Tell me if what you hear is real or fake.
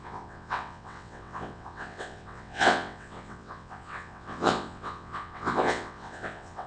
fake